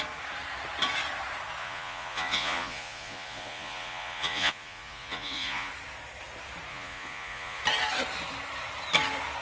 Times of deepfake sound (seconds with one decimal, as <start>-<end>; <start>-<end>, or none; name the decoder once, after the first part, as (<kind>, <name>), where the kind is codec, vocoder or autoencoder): 1.6-5.7 (vocoder, Vocos); 6.7-7.6